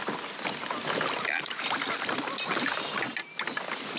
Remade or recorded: recorded